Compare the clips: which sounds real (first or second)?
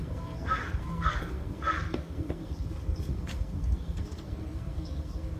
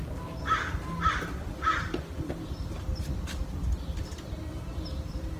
second